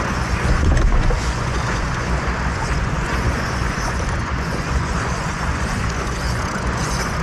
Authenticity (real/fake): fake